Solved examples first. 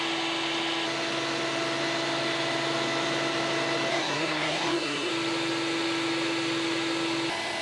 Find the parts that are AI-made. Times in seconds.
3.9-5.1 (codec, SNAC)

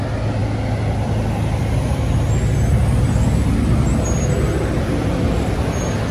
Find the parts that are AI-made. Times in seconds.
none

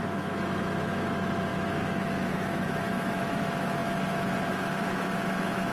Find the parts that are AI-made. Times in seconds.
0.0-5.7 (autoencoder, DAC-VAE)

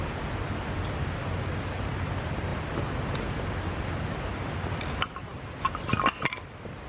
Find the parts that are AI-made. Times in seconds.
none

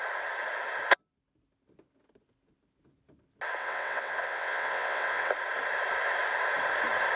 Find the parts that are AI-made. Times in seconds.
3.6-5.3 (vocoder, WaveNeXt)